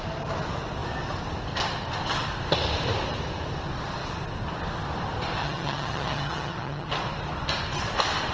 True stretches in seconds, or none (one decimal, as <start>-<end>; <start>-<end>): 0.0-5.4; 6.9-8.3